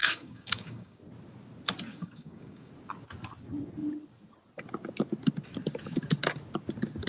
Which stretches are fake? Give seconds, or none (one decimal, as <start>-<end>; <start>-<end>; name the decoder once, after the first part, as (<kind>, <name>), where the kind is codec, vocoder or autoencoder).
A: 0.0-1.0 (codec, DAC); 1.9-2.7